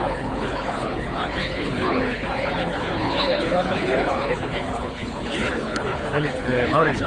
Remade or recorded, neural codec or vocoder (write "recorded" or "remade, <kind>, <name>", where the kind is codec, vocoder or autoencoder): remade, codec, HILCodec